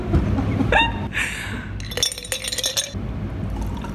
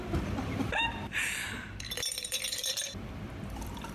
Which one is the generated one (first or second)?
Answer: second